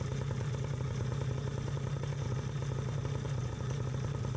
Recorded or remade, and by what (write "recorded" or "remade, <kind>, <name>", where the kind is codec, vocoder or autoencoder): recorded